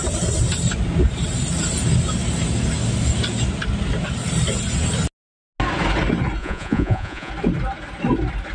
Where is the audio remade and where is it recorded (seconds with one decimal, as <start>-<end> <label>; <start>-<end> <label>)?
0.0-6.4 recorded; 6.4-7.3 remade; 7.3-8.5 recorded